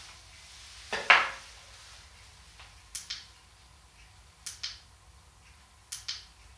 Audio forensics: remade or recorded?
recorded